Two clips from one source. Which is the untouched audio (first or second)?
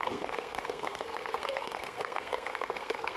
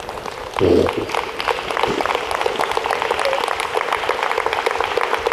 second